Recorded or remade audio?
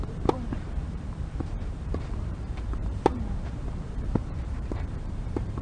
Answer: remade